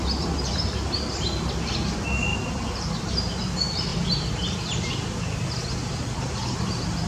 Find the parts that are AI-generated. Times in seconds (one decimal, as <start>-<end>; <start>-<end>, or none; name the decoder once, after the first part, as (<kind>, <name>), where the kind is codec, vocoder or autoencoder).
2.3-3.5 (vocoder, BigVGAN v2); 3.9-4.9; 5.8-6.3